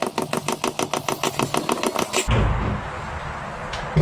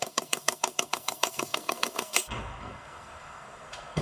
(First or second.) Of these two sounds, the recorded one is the first